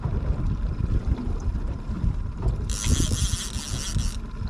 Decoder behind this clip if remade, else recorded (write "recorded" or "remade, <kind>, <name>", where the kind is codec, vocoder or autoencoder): recorded